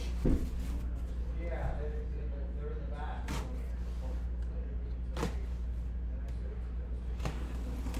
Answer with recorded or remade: recorded